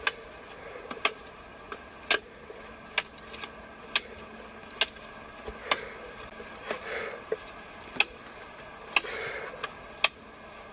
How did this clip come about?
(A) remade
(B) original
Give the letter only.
B